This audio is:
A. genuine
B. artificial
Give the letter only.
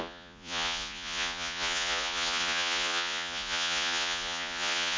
B